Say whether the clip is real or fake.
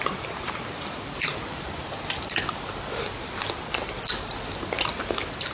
real